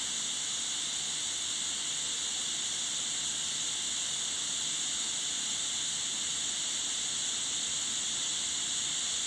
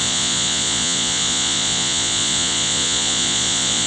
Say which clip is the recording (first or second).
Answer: first